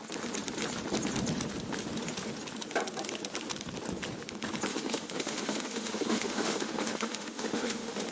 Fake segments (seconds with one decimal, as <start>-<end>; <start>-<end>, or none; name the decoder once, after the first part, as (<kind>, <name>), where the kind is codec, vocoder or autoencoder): 4.7-8.1 (autoencoder, DAC-VAE)